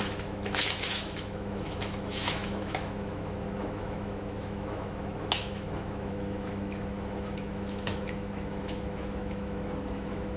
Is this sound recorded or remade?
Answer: remade